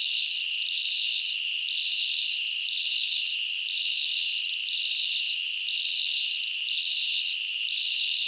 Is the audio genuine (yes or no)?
yes